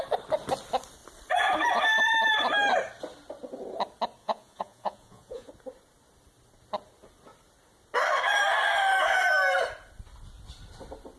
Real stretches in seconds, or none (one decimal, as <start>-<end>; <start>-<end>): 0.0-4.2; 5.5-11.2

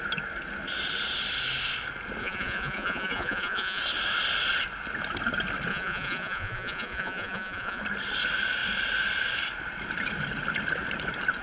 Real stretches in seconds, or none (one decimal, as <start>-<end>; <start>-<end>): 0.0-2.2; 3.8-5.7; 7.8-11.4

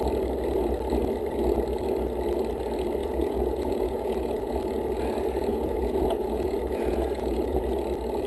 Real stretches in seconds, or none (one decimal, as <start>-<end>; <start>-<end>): 0.0-3.0; 4.6-5.5; 7.7-8.3

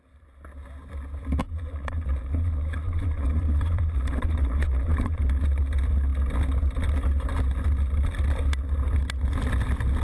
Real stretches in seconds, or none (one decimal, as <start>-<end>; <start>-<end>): 0.0-1.4; 5.2-10.0

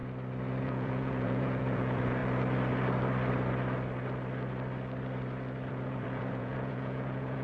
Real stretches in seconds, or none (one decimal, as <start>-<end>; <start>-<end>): 0.0-0.6; 2.2-5.7

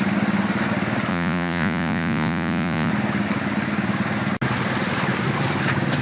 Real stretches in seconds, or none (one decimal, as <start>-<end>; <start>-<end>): 0.0-1.1; 2.9-6.0

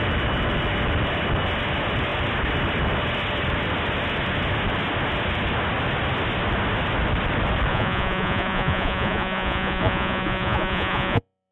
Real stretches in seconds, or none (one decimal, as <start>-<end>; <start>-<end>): 0.0-7.7